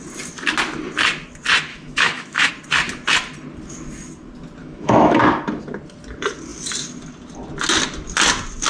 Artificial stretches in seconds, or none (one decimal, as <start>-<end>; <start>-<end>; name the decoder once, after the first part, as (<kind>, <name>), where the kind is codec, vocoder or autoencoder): 1.7-2.5 (autoencoder, DAC-VAE); 4.6-5.2